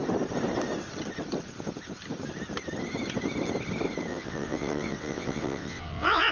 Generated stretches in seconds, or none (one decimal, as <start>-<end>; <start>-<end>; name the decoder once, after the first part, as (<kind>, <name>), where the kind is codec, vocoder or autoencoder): 4.1-6.3 (vocoder, WaveNeXt)